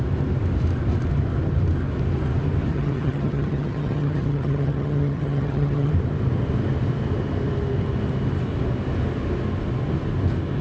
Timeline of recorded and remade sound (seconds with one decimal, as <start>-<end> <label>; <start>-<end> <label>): 0.0-2.7 recorded; 2.7-5.9 remade; 5.9-10.6 recorded